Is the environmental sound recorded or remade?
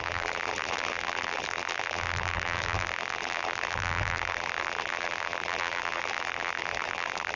remade